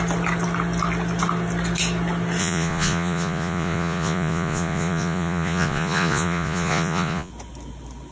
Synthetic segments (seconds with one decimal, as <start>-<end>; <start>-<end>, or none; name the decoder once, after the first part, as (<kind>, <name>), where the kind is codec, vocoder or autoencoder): 2.4-7.3 (vocoder, Vocos)